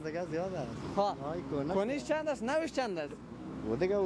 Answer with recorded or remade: remade